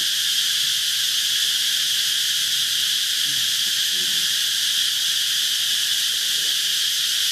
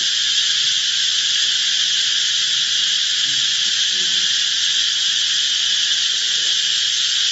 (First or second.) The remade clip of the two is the first